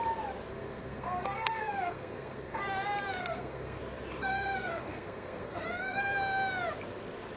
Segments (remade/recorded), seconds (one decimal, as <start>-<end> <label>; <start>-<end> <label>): 0.0-0.5 recorded; 0.5-2.6 remade; 2.6-3.2 recorded; 3.2-3.8 remade; 3.8-4.2 recorded; 4.2-6.0 remade; 6.0-7.4 recorded